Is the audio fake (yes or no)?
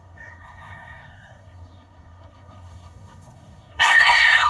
yes